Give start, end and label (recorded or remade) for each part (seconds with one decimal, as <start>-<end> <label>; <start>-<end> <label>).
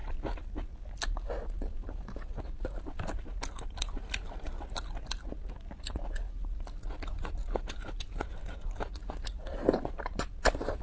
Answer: 0.0-10.8 recorded